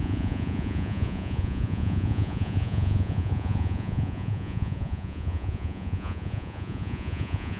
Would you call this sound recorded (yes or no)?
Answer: no